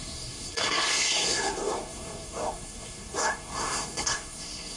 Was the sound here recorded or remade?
remade